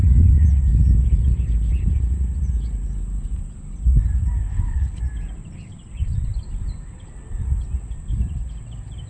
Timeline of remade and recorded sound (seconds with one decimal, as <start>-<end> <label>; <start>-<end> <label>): 0.0-4.5 recorded; 4.5-5.0 remade; 5.0-9.1 recorded